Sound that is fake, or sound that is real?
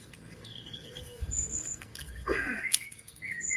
fake